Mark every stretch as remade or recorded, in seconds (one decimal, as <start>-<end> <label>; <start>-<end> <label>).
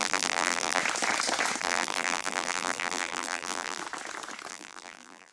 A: 0.0-0.8 remade; 0.8-1.6 recorded; 1.6-3.8 remade; 3.8-4.5 recorded; 4.5-5.3 remade